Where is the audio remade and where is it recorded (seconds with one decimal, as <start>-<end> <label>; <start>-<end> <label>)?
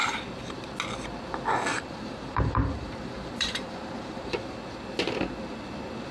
0.0-1.7 recorded; 1.7-4.6 remade; 4.6-6.1 recorded